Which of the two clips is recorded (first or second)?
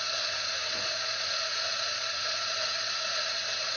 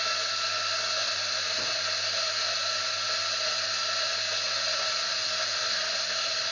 second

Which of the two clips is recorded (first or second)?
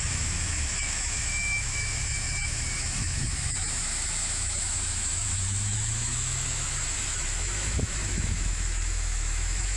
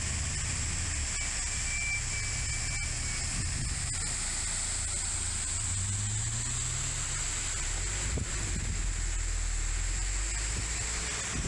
second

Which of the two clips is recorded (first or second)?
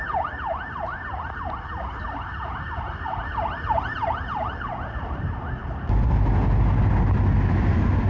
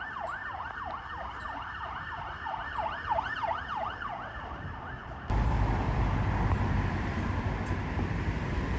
first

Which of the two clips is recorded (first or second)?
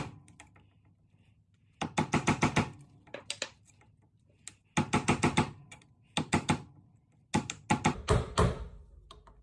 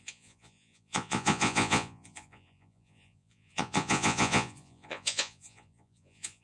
first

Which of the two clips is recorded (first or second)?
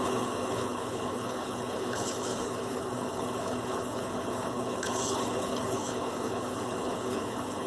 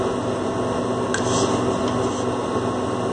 second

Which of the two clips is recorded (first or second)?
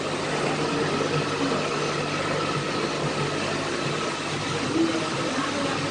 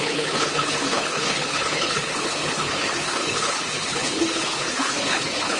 first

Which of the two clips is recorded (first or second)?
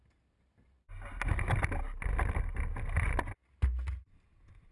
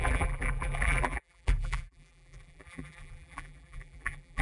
first